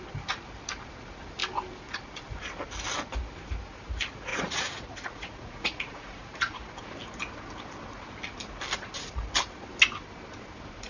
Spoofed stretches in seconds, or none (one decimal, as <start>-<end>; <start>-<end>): 4.3-6.7